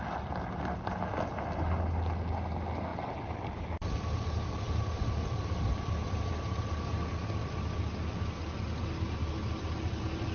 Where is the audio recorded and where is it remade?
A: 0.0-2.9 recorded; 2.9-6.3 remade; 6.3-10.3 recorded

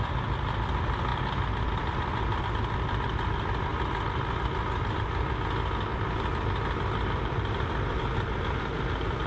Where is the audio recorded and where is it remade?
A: 0.0-9.3 recorded

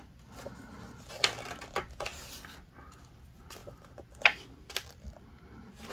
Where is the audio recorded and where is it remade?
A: 0.0-5.9 recorded

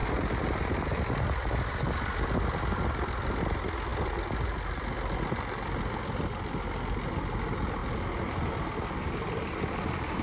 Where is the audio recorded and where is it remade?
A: 0.0-10.2 recorded

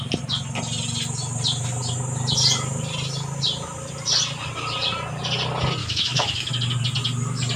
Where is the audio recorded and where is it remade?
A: 0.0-5.8 recorded; 5.8-6.5 remade; 6.5-7.6 recorded

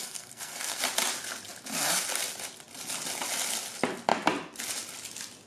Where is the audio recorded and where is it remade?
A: 0.0-0.8 remade; 0.8-5.5 recorded

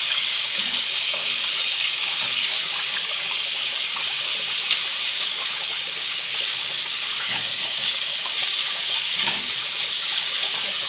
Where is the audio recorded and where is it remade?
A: 0.0-4.3 remade; 4.3-5.0 recorded; 5.0-10.9 remade